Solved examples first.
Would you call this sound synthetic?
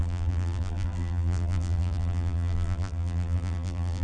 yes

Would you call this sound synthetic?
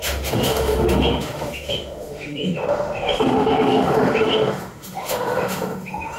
yes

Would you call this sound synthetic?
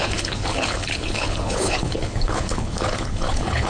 yes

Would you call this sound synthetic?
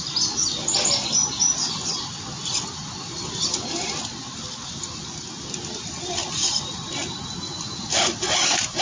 no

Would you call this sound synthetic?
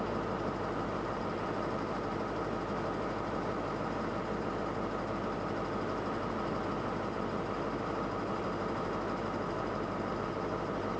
no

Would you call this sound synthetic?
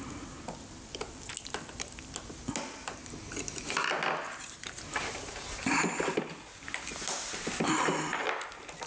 no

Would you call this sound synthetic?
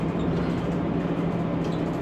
no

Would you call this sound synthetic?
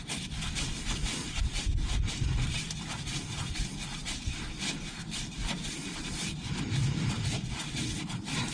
yes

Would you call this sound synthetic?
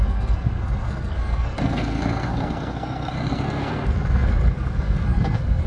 yes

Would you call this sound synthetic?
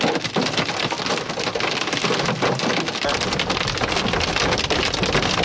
no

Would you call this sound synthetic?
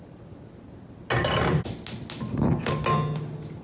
no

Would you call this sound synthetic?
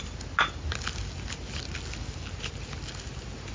no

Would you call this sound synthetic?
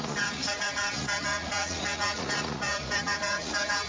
yes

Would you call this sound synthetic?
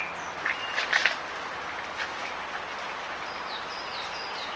no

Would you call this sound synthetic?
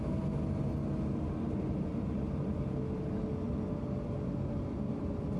no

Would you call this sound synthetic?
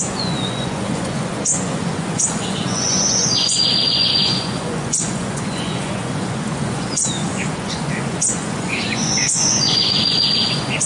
yes